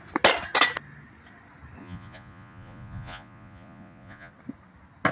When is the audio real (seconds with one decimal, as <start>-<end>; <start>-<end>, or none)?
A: 0.0-1.8; 4.3-5.1